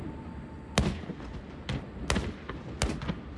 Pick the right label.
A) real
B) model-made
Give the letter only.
A